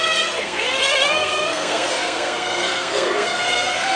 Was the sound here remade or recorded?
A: remade